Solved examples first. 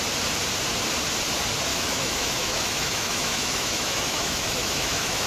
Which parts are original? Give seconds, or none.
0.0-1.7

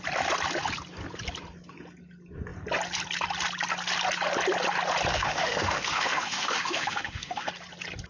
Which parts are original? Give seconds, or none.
0.0-5.1; 7.5-8.1